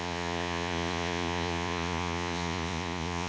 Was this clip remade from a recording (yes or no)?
yes